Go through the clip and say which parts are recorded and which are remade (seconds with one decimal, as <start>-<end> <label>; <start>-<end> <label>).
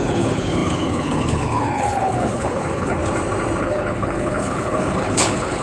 0.0-3.0 remade; 3.0-3.6 recorded; 3.6-5.6 remade